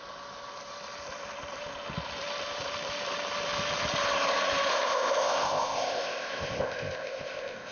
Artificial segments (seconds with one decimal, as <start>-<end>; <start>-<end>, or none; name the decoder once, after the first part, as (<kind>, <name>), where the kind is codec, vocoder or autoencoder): 4.7-7.7 (codec, ZipCodec)